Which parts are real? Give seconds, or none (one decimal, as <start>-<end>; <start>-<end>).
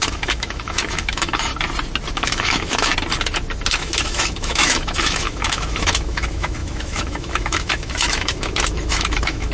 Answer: 1.5-2.1; 2.9-3.8